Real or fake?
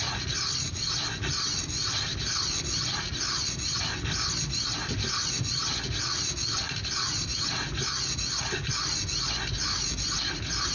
real